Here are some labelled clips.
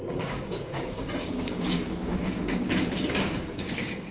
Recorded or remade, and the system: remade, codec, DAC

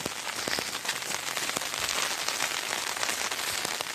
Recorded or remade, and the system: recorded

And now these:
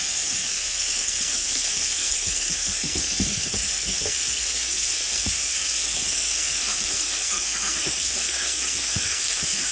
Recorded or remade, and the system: remade, codec, SNAC